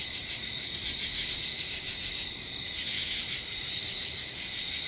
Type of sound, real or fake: real